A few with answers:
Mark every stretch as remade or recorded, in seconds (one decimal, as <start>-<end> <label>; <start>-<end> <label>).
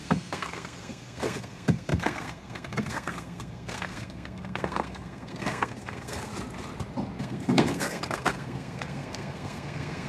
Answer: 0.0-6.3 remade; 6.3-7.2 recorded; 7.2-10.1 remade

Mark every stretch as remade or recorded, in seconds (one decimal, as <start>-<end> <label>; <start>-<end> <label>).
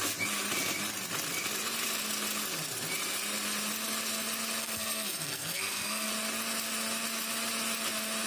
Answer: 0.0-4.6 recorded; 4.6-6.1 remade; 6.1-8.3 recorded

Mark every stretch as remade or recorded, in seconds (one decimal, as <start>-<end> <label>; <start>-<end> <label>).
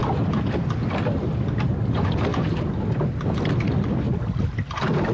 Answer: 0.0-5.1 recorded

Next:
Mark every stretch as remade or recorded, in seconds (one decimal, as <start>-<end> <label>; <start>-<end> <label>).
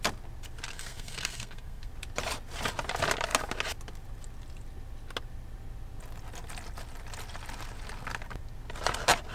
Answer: 0.0-0.7 recorded; 0.7-1.9 remade; 1.9-9.3 recorded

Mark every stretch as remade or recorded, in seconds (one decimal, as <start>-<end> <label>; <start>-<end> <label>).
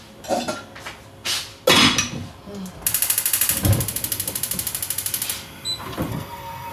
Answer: 0.0-6.1 recorded; 6.1-6.7 remade